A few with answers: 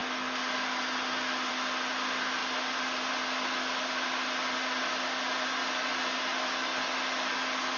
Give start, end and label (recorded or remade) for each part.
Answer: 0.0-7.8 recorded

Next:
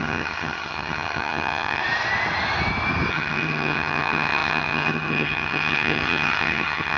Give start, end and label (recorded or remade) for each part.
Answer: 0.0-1.8 remade; 1.8-3.1 recorded; 3.1-7.0 remade

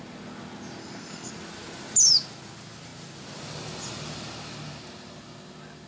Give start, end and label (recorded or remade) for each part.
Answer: 0.0-0.8 recorded; 0.8-1.3 remade; 1.3-5.9 recorded

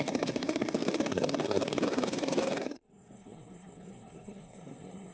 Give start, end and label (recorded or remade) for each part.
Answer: 0.0-5.1 remade

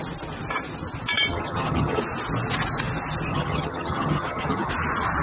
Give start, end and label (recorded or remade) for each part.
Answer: 0.0-1.3 recorded; 1.3-2.0 remade; 2.0-3.3 recorded; 3.3-4.7 remade; 4.7-5.2 recorded

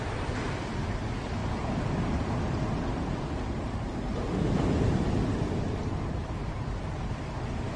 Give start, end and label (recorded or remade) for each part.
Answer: 0.0-7.8 recorded